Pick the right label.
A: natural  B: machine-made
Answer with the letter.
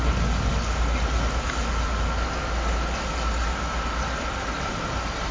A